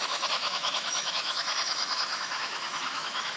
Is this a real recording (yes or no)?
no